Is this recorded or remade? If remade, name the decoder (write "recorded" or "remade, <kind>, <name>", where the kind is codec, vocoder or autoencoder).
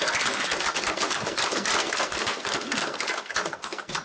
remade, codec, SNAC